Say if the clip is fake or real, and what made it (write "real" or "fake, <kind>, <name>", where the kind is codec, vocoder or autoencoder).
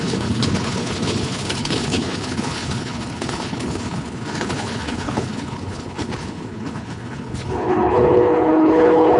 fake, codec, HILCodec